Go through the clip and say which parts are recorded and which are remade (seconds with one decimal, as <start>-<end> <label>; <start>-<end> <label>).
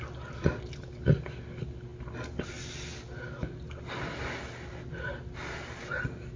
0.0-6.4 recorded